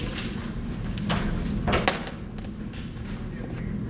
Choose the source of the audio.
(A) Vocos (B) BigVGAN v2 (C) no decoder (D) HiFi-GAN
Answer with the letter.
C